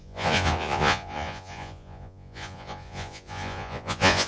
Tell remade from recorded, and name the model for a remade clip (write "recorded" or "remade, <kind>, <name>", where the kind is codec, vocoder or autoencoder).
remade, vocoder, Vocos